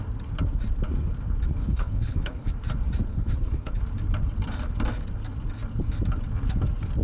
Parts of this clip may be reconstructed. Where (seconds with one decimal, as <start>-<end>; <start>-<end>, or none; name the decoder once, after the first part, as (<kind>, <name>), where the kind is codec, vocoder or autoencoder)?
1.6-2.5 (codec, HILCodec); 3.1-3.8